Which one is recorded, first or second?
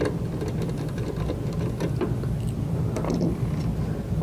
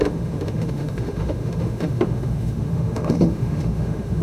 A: first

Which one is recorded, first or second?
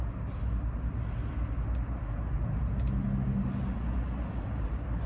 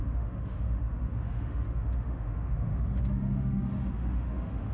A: first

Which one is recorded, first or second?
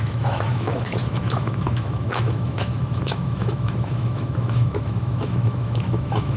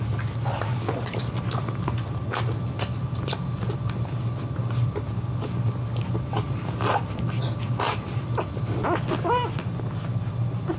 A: second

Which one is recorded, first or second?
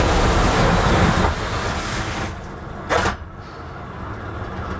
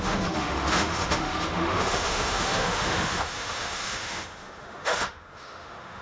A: first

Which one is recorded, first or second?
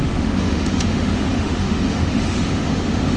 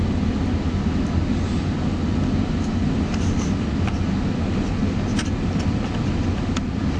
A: second